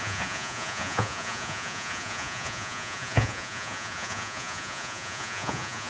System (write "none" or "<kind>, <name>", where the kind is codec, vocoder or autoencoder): vocoder, Vocos